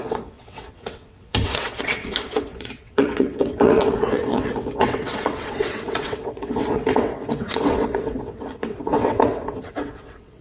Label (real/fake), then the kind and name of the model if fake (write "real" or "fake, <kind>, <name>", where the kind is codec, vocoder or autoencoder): fake, vocoder, WaveNeXt